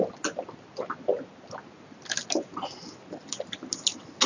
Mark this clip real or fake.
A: real